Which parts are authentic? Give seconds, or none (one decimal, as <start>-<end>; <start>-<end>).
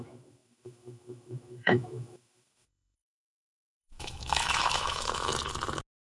5.3-6.2